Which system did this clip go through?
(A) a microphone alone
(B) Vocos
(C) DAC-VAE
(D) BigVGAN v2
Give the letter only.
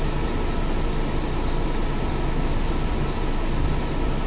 A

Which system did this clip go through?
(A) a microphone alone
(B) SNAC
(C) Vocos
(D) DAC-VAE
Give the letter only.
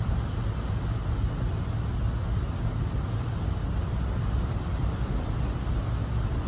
A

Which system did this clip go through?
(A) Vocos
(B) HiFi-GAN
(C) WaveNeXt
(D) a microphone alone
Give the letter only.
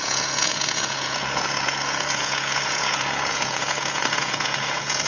A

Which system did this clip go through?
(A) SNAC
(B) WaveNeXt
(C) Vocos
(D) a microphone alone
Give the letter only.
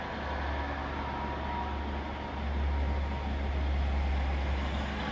D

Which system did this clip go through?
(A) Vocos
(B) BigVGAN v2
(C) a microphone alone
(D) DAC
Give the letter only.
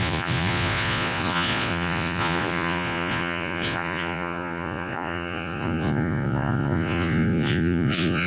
A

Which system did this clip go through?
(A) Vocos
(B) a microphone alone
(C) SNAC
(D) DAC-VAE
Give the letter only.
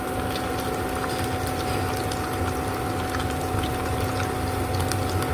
B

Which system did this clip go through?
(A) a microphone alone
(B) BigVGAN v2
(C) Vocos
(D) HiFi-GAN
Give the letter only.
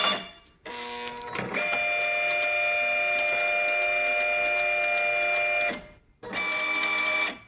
A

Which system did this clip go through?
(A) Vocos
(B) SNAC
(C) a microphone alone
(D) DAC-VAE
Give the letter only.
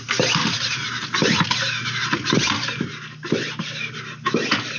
C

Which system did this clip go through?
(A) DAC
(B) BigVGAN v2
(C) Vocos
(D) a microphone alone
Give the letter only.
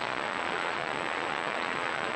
C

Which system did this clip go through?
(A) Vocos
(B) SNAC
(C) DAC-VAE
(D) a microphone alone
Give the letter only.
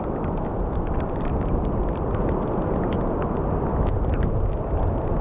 D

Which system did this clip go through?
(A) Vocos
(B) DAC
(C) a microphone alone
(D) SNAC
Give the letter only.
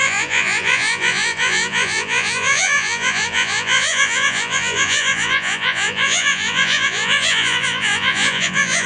A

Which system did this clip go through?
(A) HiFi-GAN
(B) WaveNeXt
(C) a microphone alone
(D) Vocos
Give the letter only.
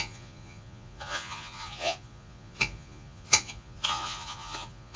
D